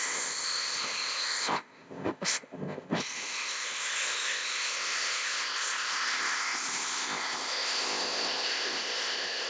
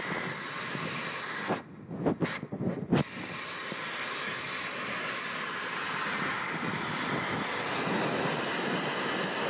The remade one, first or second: first